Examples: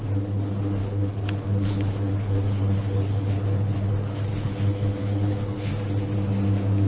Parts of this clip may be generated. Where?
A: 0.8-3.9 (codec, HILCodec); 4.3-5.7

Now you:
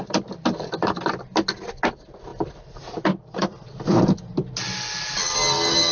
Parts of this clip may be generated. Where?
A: none

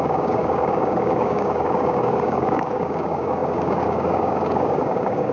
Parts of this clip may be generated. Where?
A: 0.0-5.3 (codec, DAC)

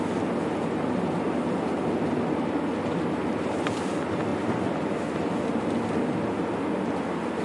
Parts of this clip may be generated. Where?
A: none

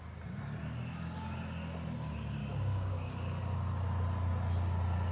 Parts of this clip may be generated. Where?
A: 2.4-3.1 (codec, DAC)

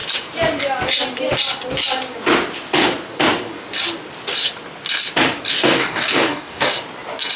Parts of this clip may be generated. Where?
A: 5.5-6.7 (codec, DAC)

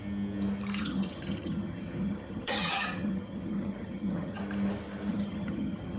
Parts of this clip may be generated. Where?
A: 0.8-4.4 (vocoder, HiFi-GAN); 5.1-6.0

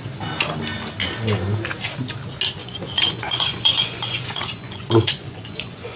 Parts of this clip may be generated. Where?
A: 2.6-6.0 (vocoder, Vocos)